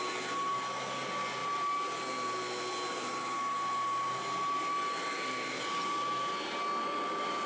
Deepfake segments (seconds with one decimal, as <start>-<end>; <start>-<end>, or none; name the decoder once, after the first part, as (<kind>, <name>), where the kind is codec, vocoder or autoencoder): none